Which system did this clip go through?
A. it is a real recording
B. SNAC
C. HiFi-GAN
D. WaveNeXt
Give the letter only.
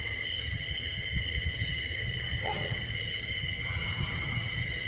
C